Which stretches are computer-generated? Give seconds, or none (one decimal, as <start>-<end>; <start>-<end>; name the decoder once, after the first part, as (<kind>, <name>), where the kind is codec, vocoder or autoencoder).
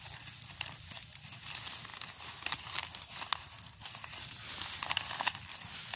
none